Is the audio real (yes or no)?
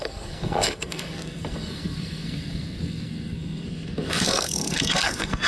no